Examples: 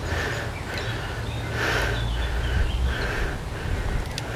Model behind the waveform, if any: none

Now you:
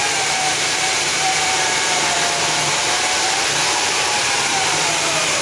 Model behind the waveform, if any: vocoder, BigVGAN v2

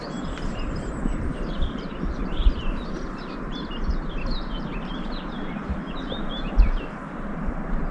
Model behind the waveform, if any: vocoder, BigVGAN v2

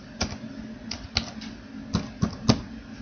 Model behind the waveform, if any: none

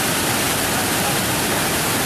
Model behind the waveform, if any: vocoder, BigVGAN v2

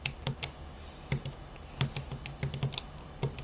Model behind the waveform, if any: none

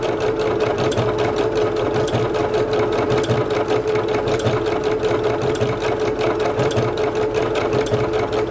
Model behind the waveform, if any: none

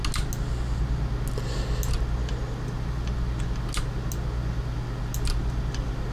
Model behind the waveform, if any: none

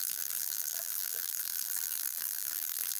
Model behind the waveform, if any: vocoder, BigVGAN v2